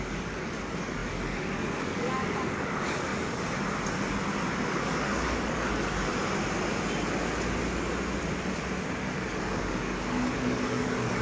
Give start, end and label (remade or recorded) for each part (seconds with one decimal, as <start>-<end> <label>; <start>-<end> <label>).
0.0-3.1 remade; 3.1-4.7 recorded; 4.7-6.1 remade; 6.1-9.3 recorded; 9.3-11.2 remade